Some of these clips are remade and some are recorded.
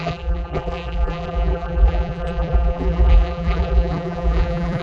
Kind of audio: remade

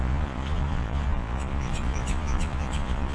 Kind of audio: remade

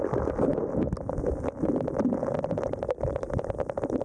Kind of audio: recorded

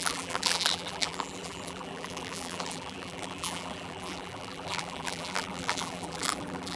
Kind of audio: remade